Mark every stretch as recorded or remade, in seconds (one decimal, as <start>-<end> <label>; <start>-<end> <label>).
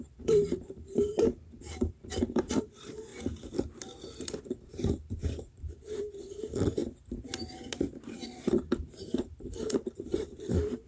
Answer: 0.0-3.1 remade; 3.1-4.4 recorded; 4.4-6.8 remade; 6.8-8.5 recorded; 8.5-10.9 remade